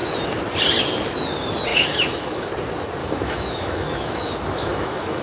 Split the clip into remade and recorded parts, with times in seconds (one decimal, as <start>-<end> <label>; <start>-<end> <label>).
0.0-1.7 recorded; 1.7-2.5 remade; 2.5-3.0 recorded; 3.0-5.2 remade